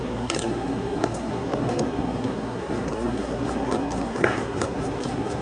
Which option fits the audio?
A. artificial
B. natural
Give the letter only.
A